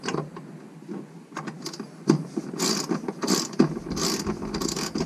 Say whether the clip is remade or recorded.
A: recorded